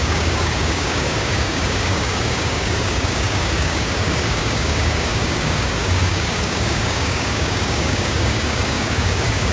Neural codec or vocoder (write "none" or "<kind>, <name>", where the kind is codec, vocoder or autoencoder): codec, DAC